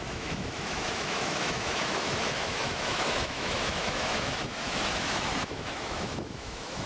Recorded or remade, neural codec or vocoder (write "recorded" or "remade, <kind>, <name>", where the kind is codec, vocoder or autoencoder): remade, autoencoder, DAC-VAE